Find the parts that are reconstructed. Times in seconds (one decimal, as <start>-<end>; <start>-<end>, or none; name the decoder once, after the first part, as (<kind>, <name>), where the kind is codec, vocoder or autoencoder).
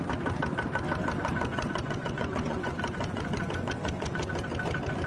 1.2-4.3 (vocoder, Vocos)